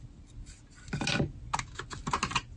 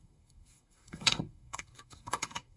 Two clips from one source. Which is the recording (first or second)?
first